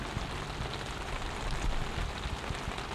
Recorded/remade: recorded